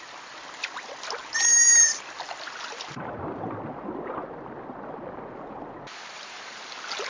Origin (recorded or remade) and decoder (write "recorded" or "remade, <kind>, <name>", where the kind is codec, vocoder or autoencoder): recorded